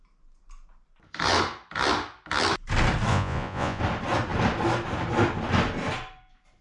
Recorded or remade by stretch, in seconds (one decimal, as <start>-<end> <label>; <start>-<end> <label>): 0.0-3.1 recorded; 3.1-3.8 remade; 3.8-6.6 recorded